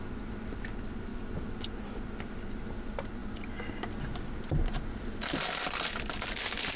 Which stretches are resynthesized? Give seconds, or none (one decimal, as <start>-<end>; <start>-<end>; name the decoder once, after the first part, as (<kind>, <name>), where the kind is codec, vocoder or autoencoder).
none